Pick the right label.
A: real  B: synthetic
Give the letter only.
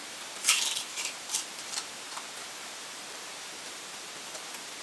B